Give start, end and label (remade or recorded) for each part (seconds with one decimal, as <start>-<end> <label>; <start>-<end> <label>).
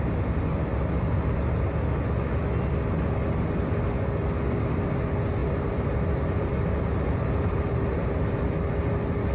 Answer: 0.0-5.4 recorded; 5.4-8.2 remade; 8.2-9.3 recorded